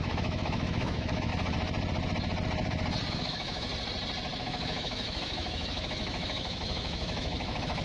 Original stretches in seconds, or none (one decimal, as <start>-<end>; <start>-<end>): 1.3-3.1; 3.7-4.4

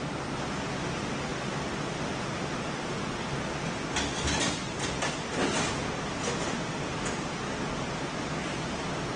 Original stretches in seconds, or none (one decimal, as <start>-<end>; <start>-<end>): 0.0-1.3; 2.4-9.2

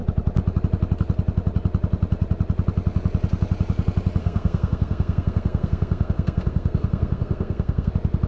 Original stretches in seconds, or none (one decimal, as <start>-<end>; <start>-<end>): 0.0-4.2; 7.9-8.3

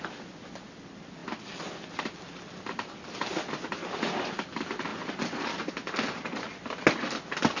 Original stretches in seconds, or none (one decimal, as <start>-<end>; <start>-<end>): 0.0-4.9; 5.7-7.6